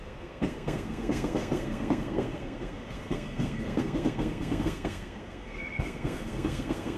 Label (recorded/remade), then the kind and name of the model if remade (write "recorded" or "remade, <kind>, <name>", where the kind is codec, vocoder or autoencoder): remade, codec, SNAC